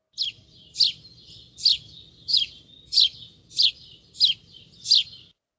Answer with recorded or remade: recorded